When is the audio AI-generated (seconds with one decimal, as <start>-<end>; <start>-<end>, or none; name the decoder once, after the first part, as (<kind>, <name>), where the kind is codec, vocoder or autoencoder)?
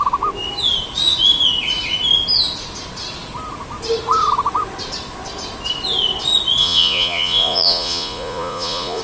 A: 6.6-9.0 (vocoder, Vocos)